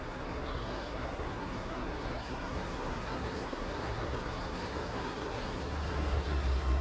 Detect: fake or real fake